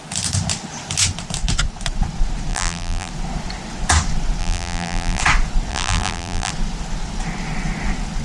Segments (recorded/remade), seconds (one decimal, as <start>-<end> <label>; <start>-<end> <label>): 0.0-2.5 recorded; 2.5-3.1 remade; 3.1-4.4 recorded; 4.4-5.2 remade; 5.2-5.7 recorded; 5.7-6.5 remade; 6.5-8.2 recorded